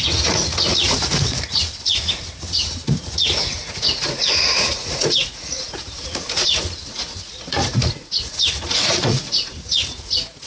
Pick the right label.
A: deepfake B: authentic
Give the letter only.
A